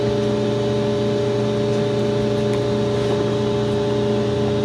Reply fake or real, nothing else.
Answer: real